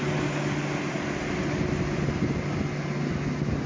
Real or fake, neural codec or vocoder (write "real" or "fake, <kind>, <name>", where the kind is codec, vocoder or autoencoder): real